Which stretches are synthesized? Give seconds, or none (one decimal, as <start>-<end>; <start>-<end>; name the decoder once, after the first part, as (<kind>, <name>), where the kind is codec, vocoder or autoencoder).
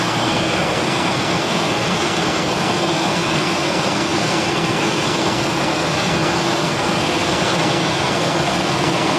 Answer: 0.0-9.2 (codec, SNAC)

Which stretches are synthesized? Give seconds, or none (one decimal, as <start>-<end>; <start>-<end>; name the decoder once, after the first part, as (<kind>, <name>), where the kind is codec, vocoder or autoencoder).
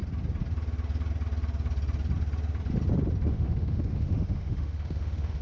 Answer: 3.3-5.4 (autoencoder, DAC-VAE)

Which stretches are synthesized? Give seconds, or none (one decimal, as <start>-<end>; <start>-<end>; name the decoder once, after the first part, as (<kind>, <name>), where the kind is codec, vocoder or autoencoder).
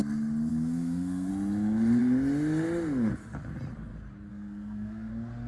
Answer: 0.5-1.3 (codec, SNAC); 4.3-5.1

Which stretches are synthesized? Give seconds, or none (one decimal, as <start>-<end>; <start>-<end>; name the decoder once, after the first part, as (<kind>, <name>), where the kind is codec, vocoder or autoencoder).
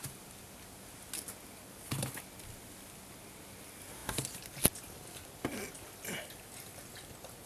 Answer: none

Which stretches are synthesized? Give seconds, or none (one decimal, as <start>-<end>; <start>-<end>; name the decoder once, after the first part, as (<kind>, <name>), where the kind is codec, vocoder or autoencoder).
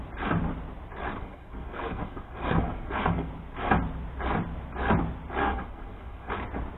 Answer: 1.2-3.3 (codec, SNAC); 5.4-6.3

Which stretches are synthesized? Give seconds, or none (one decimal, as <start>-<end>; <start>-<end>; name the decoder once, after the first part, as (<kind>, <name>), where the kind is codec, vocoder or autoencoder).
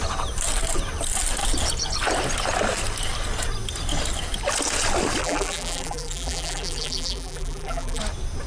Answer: 5.2-8.0 (vocoder, BigVGAN v2)